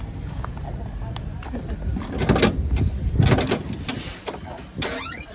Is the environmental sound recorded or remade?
recorded